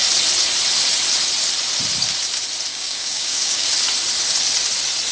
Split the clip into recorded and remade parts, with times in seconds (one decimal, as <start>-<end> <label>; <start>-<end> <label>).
0.0-2.7 recorded; 2.7-3.7 remade; 3.7-5.1 recorded